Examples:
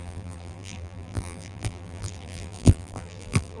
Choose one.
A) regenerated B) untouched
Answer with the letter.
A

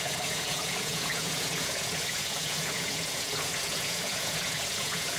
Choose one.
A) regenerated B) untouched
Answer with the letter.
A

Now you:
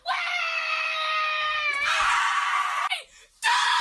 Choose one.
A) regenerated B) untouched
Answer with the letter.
A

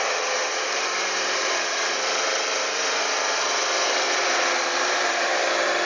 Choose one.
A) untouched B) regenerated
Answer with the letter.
B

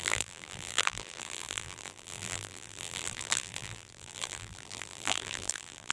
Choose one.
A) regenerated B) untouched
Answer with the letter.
A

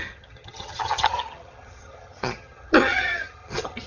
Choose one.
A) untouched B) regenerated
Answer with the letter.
B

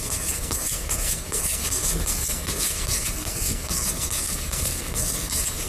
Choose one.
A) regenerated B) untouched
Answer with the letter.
A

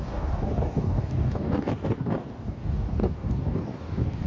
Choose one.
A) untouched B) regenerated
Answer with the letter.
B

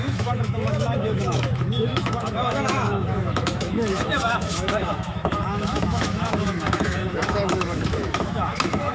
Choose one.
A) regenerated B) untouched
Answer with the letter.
A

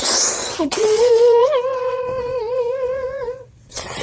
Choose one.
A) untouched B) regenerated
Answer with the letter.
B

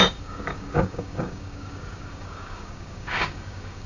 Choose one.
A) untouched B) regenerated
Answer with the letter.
B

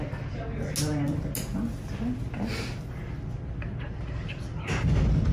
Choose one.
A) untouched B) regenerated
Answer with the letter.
A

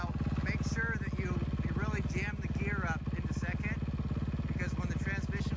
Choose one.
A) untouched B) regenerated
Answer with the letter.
A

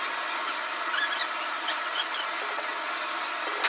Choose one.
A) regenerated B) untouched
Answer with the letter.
B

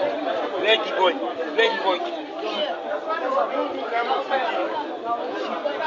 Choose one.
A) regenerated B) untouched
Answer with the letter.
B